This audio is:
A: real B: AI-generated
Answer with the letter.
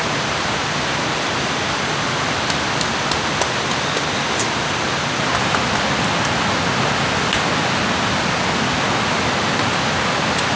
A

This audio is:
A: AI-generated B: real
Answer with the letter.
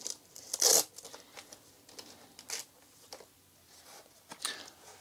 B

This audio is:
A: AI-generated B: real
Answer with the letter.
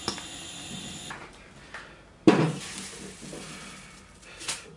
B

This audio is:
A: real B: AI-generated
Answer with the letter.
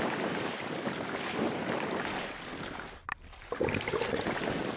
A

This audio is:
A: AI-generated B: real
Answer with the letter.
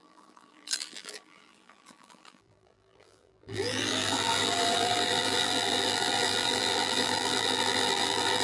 A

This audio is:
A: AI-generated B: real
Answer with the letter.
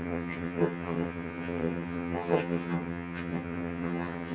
A